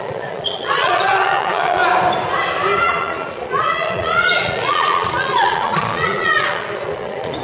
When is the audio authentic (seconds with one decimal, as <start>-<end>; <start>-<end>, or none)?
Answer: 1.8-2.8